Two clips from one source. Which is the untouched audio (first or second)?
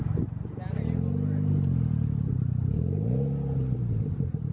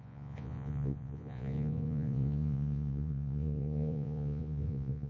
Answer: first